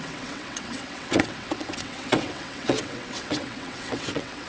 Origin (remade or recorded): remade